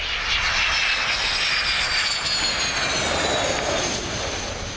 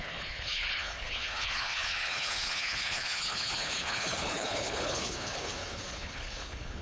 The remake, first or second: second